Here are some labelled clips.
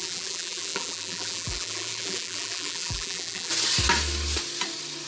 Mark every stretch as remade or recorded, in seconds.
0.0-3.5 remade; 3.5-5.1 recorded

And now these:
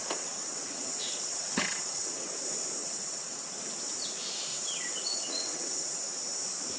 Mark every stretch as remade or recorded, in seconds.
0.0-2.3 remade; 2.3-2.8 recorded; 2.8-3.5 remade; 3.5-4.5 recorded; 4.5-6.0 remade; 6.0-6.8 recorded

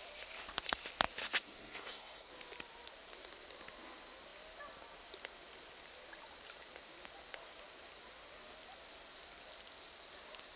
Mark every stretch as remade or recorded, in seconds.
0.0-1.2 recorded; 1.2-2.3 remade; 2.3-10.6 recorded

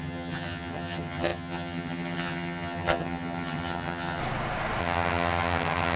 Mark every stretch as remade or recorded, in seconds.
0.0-4.2 remade; 4.2-4.8 recorded; 4.8-6.0 remade

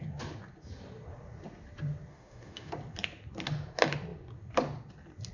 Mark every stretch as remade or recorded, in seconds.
0.0-2.1 recorded; 2.1-2.7 remade; 2.7-5.3 recorded